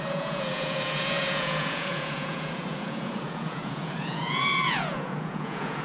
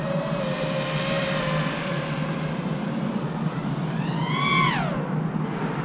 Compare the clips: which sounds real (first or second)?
second